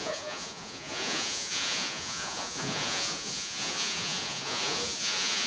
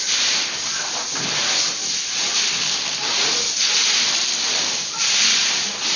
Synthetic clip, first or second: first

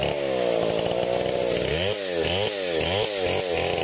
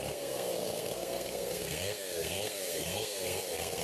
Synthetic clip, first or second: second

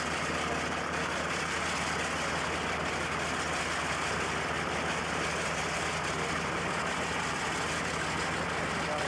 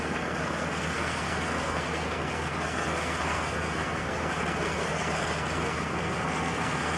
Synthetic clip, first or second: second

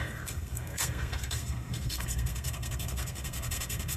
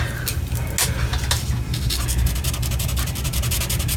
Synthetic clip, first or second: first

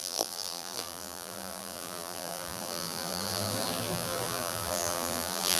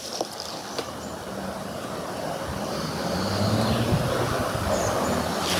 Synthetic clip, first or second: first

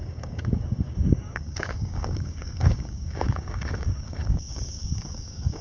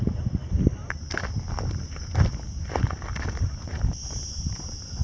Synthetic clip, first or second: first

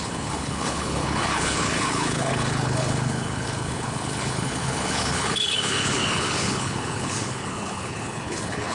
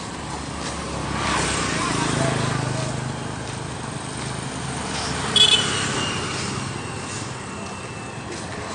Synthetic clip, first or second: first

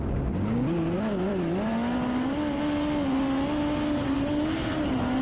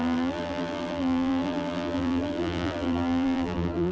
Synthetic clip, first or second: second